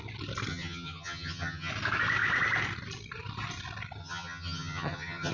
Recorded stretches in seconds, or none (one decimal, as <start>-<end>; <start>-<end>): 0.0-0.5; 1.7-4.0